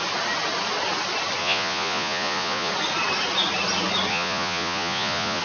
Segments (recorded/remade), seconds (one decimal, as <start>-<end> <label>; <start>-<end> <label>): 0.0-1.4 recorded; 1.4-2.7 remade; 2.7-4.1 recorded; 4.1-5.4 remade